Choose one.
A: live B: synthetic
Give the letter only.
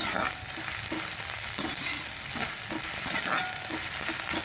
A